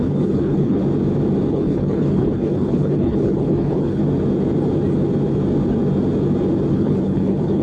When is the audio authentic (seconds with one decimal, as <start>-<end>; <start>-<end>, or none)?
0.8-1.5; 4.0-6.7